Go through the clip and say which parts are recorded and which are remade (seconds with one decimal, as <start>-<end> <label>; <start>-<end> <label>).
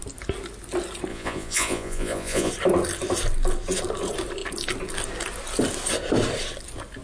0.0-1.1 recorded; 1.1-2.5 remade; 2.5-7.0 recorded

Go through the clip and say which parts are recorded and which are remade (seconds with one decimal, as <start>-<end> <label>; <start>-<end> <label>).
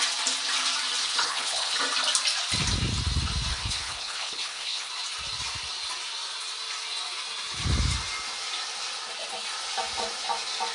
0.0-1.0 recorded; 1.0-1.8 remade; 1.8-3.5 recorded; 3.5-4.9 remade; 4.9-10.7 recorded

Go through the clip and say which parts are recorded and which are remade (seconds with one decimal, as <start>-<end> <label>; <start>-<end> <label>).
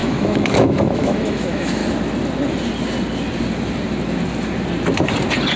0.0-1.8 remade; 1.8-5.6 recorded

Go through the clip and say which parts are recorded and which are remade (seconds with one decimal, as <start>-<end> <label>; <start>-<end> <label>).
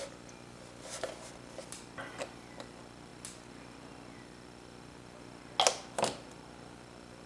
0.0-7.3 recorded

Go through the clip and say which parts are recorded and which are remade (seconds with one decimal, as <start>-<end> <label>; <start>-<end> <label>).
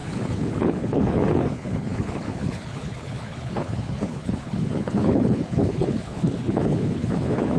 0.0-7.6 remade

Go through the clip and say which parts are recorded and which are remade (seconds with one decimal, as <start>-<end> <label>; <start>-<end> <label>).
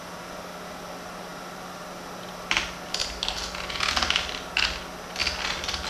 0.0-3.0 recorded; 3.0-3.7 remade; 3.7-5.9 recorded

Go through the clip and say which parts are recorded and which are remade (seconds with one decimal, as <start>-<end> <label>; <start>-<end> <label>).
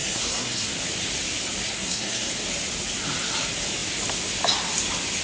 0.0-0.7 remade; 0.7-1.7 recorded; 1.7-2.3 remade; 2.3-5.2 recorded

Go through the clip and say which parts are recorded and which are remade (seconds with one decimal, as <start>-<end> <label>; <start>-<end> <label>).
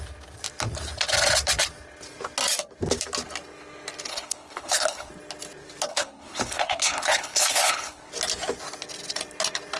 0.0-4.1 recorded; 4.1-5.1 remade; 5.1-5.9 recorded; 5.9-8.1 remade; 8.1-9.8 recorded